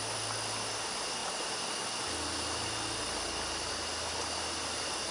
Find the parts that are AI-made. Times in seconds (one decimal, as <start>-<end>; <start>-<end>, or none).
none